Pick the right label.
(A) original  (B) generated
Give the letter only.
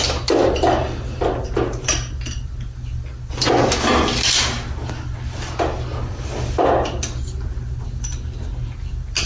A